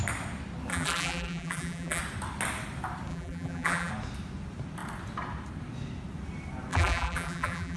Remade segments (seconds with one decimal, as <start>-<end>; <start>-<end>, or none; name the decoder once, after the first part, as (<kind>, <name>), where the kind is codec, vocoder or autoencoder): 0.7-2.0 (vocoder, BigVGAN v2); 3.1-3.9; 6.7-7.8